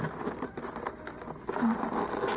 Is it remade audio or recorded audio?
recorded